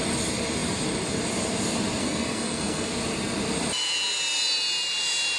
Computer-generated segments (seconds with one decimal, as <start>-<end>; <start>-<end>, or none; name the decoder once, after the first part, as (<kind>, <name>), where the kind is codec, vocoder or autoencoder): 2.0-2.9 (codec, SNAC)

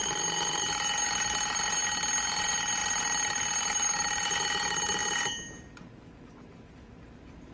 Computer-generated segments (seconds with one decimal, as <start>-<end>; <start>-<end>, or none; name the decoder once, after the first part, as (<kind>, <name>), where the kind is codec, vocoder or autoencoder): 0.0-1.8 (vocoder, BigVGAN v2); 2.4-7.5

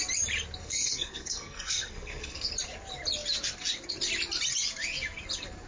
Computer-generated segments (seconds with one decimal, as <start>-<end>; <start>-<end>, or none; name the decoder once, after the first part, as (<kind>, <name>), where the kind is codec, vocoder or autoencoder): 0.6-2.5 (codec, SNAC)